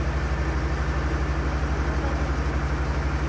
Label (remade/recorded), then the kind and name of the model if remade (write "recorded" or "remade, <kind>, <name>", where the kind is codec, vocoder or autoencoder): recorded